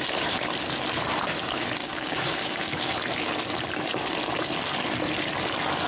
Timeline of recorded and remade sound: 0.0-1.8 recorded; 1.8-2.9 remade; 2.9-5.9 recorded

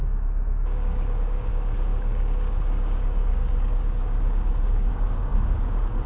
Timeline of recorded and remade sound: 0.0-6.1 remade